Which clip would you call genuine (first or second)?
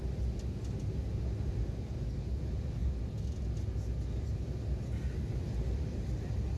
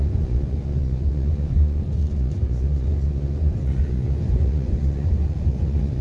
first